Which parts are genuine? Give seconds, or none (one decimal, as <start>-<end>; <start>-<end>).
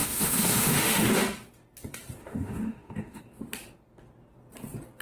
1.2-2.2; 3.2-5.0